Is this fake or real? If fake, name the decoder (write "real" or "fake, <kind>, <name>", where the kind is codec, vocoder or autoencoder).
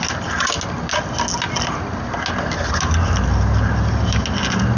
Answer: real